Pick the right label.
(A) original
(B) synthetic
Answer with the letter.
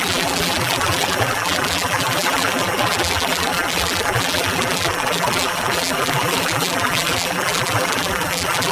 B